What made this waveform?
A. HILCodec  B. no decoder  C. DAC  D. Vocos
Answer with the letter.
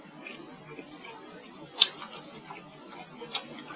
B